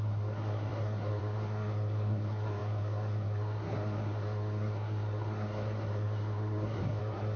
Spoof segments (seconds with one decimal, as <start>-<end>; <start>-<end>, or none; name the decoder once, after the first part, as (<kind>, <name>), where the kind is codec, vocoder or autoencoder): 0.0-7.4 (codec, SNAC)